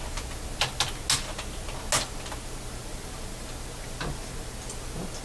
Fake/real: real